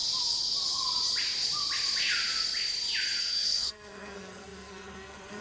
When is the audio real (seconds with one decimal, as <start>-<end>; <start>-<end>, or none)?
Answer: 0.0-3.2